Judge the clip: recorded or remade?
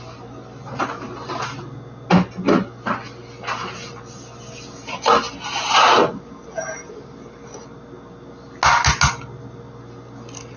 recorded